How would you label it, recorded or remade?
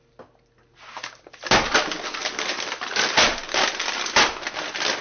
recorded